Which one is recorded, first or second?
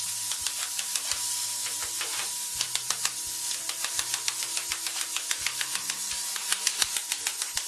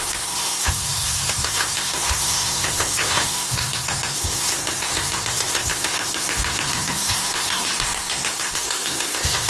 first